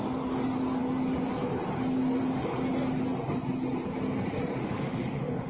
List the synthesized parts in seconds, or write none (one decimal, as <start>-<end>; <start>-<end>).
4.6-5.5